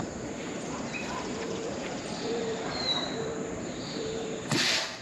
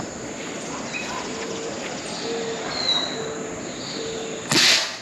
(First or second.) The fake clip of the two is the first